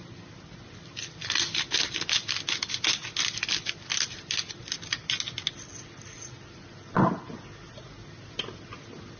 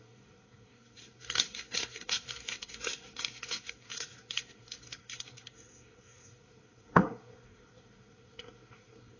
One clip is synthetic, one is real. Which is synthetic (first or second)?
second